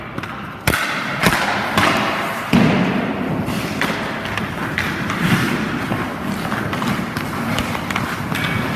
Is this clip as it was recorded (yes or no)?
yes